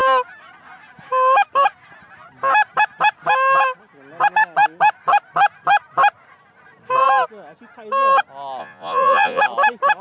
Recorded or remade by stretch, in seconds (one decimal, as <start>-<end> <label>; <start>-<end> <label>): 0.0-8.6 recorded; 8.6-9.4 remade; 9.4-10.0 recorded